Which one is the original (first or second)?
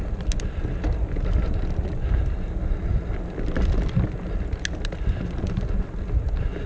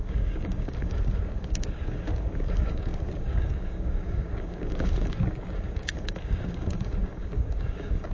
first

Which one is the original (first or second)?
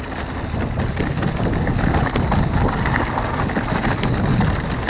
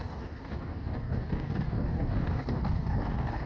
first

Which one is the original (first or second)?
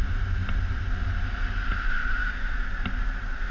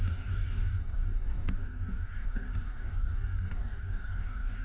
first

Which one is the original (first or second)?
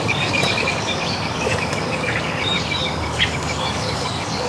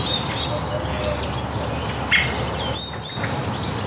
second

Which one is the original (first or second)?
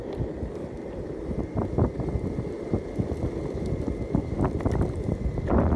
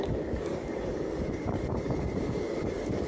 first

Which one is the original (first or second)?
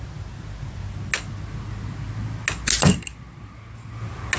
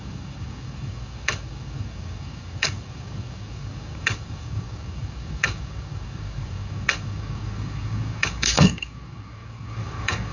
first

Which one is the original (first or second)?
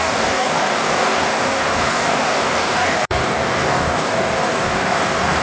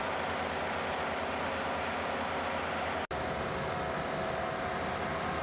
second